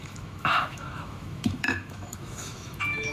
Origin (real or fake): fake